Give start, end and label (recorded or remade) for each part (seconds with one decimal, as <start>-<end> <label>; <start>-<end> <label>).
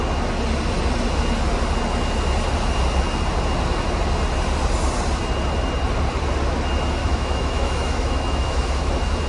0.0-7.0 recorded; 7.0-8.9 remade; 8.9-9.3 recorded